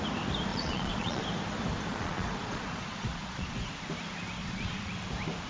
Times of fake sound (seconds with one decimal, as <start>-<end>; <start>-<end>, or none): 0.5-1.2; 1.9-3.7; 4.4-4.9